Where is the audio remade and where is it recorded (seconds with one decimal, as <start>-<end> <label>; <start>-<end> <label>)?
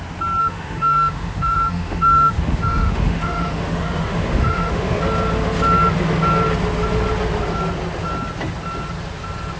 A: 0.0-0.4 recorded; 0.4-5.0 remade; 5.0-9.6 recorded